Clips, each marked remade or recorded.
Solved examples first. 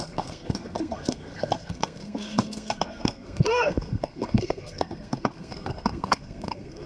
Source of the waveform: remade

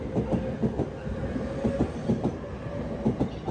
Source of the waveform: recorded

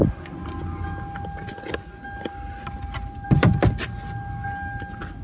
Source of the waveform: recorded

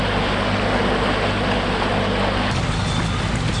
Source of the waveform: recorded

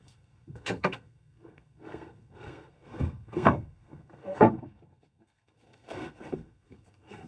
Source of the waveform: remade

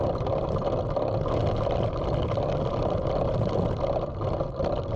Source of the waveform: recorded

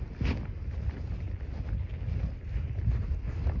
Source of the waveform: recorded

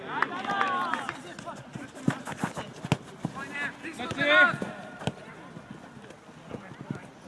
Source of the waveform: recorded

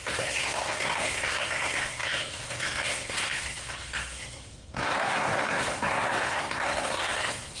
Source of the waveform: remade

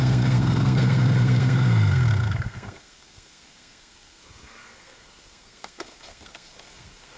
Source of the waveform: remade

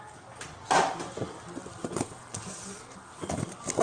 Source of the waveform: recorded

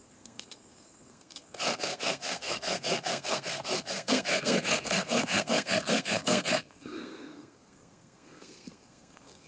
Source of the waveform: remade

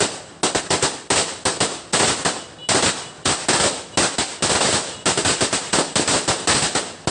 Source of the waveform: recorded